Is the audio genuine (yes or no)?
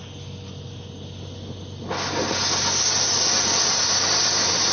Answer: yes